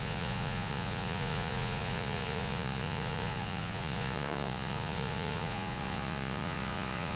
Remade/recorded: remade